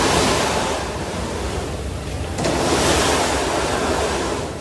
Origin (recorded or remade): recorded